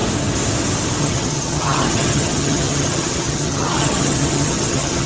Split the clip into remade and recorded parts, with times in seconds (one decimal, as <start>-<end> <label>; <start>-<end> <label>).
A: 0.0-1.0 recorded; 1.0-5.1 remade

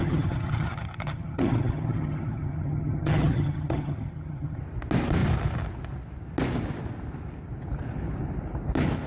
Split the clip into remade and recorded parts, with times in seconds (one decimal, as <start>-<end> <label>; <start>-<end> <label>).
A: 0.0-4.6 remade; 4.6-9.1 recorded

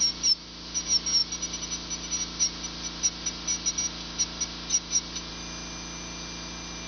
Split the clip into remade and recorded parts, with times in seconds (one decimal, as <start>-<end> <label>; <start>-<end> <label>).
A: 0.0-6.9 recorded

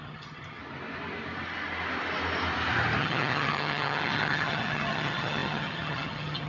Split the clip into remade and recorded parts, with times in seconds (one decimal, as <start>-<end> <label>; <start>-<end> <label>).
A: 0.0-0.6 remade; 0.6-3.0 recorded; 3.0-6.5 remade

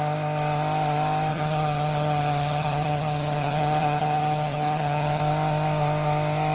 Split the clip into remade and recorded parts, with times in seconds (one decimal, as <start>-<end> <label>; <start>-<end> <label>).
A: 0.0-1.3 recorded; 1.3-5.2 remade; 5.2-6.5 recorded